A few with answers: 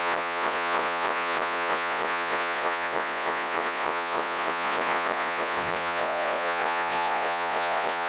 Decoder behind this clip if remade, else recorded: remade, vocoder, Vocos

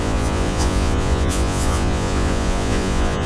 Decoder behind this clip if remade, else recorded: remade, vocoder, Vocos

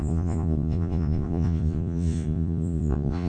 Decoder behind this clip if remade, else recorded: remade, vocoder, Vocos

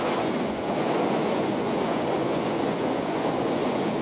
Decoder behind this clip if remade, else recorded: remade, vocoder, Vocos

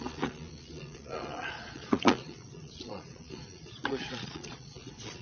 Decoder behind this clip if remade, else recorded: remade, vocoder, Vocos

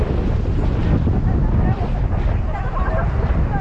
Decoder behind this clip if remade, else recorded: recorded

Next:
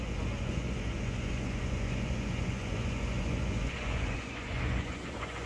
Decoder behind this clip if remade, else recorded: remade, vocoder, Vocos